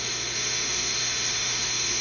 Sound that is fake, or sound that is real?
fake